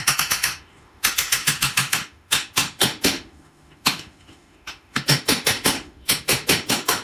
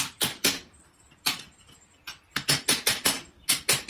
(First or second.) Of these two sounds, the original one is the second